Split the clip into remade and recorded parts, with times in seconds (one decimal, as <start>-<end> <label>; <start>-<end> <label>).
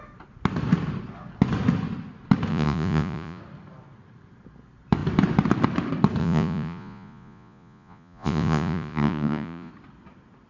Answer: 0.0-2.5 recorded; 2.5-3.4 remade; 3.4-6.2 recorded; 6.2-9.7 remade; 9.7-10.5 recorded